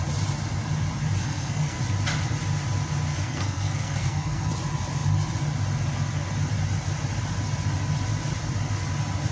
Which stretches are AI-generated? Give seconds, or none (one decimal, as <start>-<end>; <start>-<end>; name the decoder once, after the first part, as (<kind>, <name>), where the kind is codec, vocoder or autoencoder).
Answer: 1.2-1.8 (codec, SNAC); 3.1-4.5